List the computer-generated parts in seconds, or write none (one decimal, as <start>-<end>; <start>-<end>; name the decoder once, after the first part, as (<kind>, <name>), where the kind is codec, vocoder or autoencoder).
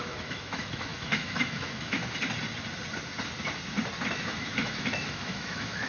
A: 0.0-2.0 (autoencoder, DAC-VAE); 4.1-5.9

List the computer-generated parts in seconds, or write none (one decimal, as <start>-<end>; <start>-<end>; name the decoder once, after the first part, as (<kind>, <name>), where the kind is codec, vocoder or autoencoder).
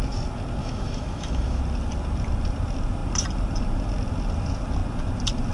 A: 0.6-1.6 (autoencoder, DAC-VAE)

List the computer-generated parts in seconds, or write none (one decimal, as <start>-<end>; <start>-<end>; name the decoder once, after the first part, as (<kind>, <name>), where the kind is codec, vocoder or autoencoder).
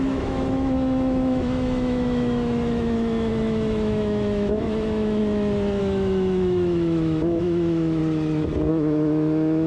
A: 0.0-5.2 (autoencoder, DAC-VAE); 5.8-8.0; 8.7-9.7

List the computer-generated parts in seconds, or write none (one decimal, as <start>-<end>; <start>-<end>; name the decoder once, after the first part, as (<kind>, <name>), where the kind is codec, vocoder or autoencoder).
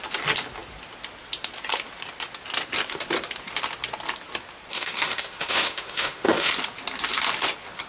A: 4.7-6.5 (autoencoder, DAC-VAE)